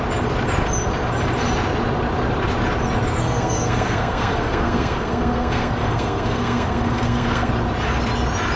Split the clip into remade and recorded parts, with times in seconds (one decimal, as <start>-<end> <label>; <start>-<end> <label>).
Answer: 0.0-3.1 recorded; 3.1-7.5 remade; 7.5-8.6 recorded